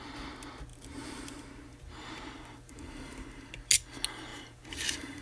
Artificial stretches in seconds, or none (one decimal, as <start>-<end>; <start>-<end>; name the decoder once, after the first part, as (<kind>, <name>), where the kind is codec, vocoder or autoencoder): 0.7-3.5 (vocoder, BigVGAN v2); 4.3-5.2